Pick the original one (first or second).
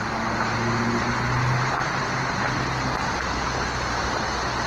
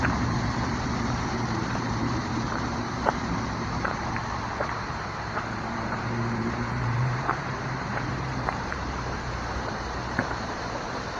first